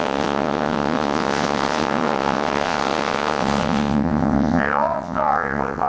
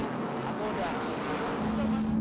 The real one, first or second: second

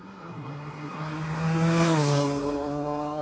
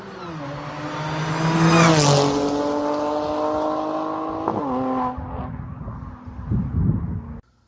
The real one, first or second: second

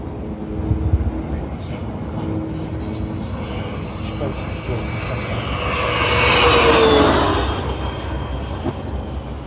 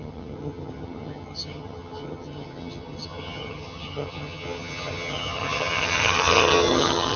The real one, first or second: first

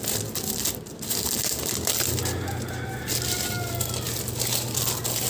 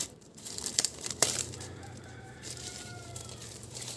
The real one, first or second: first